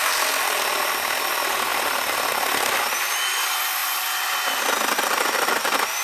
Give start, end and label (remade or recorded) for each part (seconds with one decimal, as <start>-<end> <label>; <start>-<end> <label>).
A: 0.0-6.0 remade